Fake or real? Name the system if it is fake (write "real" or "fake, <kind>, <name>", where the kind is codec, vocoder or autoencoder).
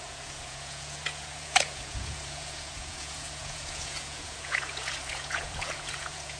fake, vocoder, Vocos